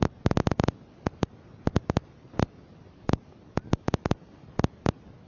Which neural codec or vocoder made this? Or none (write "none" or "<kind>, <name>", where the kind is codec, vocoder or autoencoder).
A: none